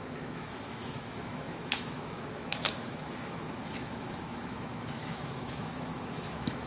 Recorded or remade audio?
remade